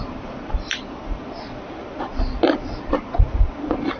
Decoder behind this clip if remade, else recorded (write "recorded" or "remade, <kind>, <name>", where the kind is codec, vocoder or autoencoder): remade, vocoder, BigVGAN v2